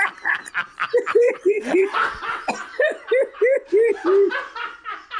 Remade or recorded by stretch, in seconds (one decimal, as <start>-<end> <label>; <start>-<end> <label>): 0.0-1.1 recorded; 1.1-2.5 remade; 2.5-5.2 recorded